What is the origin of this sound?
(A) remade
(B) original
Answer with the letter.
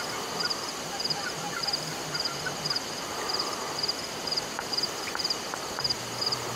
A